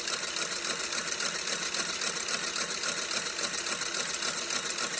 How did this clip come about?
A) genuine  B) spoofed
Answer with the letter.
A